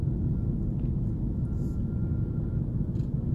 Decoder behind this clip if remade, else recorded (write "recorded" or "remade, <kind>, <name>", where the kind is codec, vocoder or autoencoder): recorded